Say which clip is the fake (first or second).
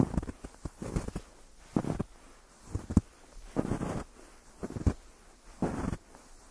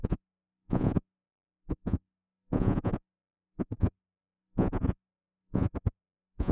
second